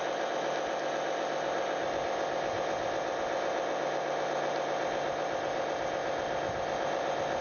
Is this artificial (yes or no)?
no